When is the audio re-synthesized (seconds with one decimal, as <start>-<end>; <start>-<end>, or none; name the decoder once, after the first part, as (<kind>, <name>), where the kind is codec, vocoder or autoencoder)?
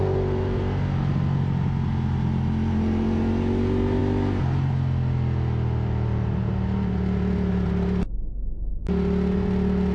none